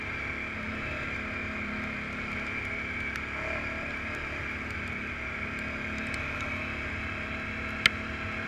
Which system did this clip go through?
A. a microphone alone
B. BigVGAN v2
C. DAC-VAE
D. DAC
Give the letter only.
A